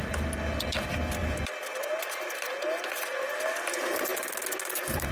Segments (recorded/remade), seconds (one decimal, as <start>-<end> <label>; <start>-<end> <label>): 0.0-5.1 recorded